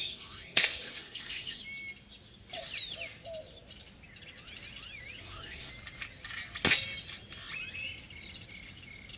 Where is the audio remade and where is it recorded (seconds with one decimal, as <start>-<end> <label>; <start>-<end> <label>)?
0.0-1.6 remade; 1.6-5.2 recorded; 5.2-5.7 remade; 5.7-9.2 recorded